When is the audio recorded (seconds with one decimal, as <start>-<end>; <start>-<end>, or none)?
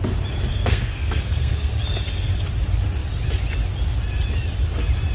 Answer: 0.0-0.5; 1.7-5.1